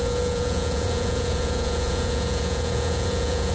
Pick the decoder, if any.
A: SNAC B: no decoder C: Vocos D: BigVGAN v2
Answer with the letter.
C